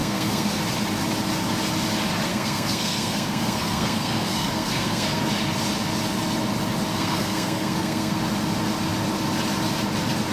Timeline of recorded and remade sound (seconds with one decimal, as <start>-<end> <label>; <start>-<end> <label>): 0.0-0.6 remade; 0.6-2.3 recorded; 2.3-5.3 remade; 5.3-6.9 recorded; 6.9-8.2 remade; 8.2-10.3 recorded